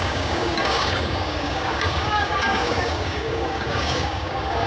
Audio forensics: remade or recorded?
remade